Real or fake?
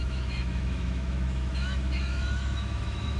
fake